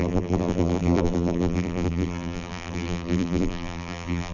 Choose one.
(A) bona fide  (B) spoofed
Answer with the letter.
B